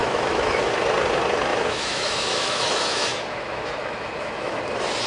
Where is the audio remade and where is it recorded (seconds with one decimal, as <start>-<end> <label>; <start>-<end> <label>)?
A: 0.0-0.7 remade; 0.7-1.5 recorded; 1.5-4.6 remade; 4.6-5.1 recorded